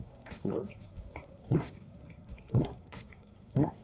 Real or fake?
fake